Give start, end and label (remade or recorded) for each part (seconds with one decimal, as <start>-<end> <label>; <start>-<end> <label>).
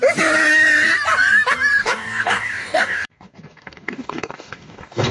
0.0-1.8 recorded; 1.8-5.1 remade